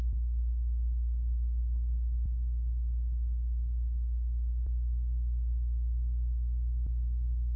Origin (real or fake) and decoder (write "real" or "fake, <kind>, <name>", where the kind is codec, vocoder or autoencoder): fake, autoencoder, DAC-VAE